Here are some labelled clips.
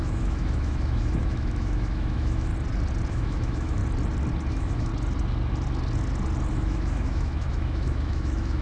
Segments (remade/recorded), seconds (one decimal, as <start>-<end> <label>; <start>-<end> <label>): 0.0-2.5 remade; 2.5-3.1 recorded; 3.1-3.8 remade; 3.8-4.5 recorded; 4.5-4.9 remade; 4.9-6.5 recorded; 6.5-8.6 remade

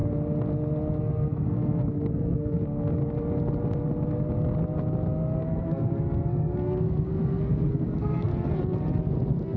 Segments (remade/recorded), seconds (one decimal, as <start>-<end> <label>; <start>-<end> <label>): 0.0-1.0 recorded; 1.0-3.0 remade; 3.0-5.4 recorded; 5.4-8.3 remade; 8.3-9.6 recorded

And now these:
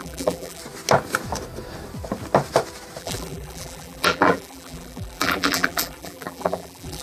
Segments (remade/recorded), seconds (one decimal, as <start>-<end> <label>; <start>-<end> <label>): 0.0-0.6 remade; 0.6-3.0 recorded; 3.0-7.0 remade

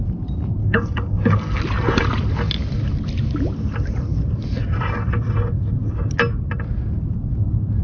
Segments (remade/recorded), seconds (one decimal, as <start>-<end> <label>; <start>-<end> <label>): 0.0-0.6 recorded; 0.6-1.6 remade; 1.6-7.8 recorded